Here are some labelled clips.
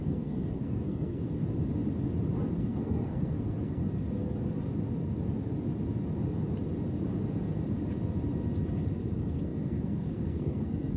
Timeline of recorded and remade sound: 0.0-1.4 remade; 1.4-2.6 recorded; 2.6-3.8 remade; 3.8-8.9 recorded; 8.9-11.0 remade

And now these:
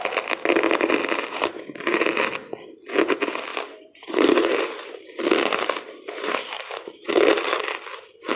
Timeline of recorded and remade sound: 0.0-1.3 recorded; 1.3-2.0 remade; 2.0-3.5 recorded; 3.5-7.6 remade; 7.6-8.4 recorded

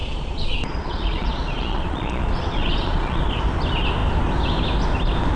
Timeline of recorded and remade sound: 0.0-3.2 remade; 3.2-5.4 recorded

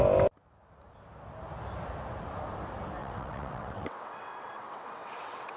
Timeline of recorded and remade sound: 0.0-3.0 recorded; 3.0-5.6 remade

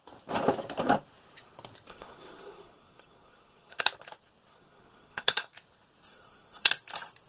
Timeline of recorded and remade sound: 0.0-1.9 recorded; 1.9-3.8 remade; 3.8-4.5 recorded; 4.5-5.5 remade; 5.5-6.1 recorded; 6.1-6.7 remade; 6.7-7.3 recorded

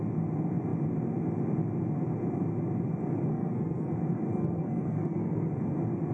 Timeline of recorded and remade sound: 0.0-3.3 recorded; 3.3-3.9 remade; 3.9-4.3 recorded; 4.3-5.5 remade; 5.5-6.1 recorded

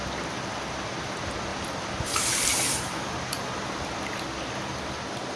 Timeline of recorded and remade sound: 0.0-1.5 recorded; 1.5-2.9 remade; 2.9-5.4 recorded